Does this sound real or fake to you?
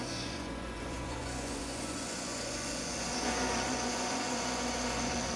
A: fake